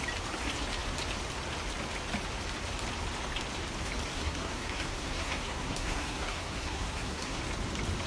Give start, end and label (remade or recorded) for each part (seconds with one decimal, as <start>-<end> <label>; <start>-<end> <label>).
0.0-4.1 recorded; 4.1-7.4 remade; 7.4-8.1 recorded